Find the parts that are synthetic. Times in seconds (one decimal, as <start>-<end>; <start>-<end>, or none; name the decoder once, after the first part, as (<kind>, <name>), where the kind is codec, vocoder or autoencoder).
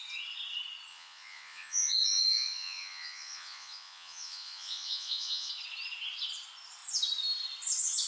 0.9-5.5 (vocoder, Vocos)